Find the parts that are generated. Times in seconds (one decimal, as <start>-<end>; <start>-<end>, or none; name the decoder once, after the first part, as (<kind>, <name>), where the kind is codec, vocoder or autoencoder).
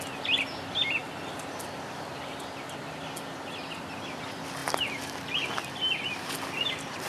none